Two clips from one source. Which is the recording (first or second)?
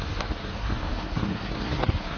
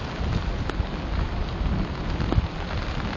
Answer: second